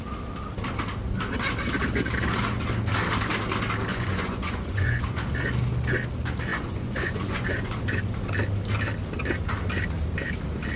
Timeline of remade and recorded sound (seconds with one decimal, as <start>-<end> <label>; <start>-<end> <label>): 0.0-3.9 recorded; 3.9-5.2 remade; 5.2-6.5 recorded; 6.5-7.7 remade; 7.7-10.8 recorded